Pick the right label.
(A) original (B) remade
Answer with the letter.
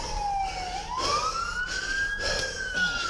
A